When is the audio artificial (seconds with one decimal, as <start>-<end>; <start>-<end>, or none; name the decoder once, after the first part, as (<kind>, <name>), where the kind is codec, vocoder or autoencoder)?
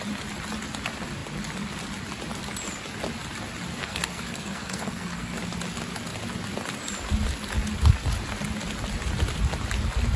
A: 3.8-5.4 (codec, SNAC)